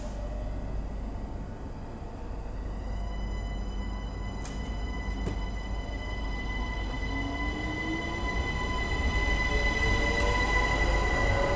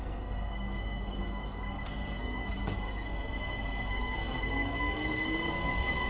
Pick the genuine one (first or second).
first